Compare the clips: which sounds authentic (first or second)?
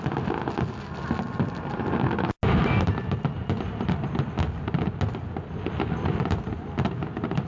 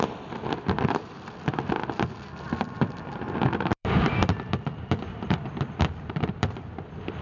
first